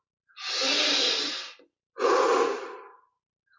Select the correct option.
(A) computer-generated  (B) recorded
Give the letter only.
B